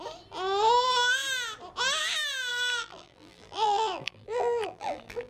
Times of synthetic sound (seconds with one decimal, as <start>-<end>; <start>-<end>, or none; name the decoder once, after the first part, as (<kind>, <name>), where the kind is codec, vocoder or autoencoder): 2.5-5.3 (vocoder, BigVGAN v2)